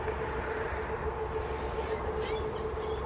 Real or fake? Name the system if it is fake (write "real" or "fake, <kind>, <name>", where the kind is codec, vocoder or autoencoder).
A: real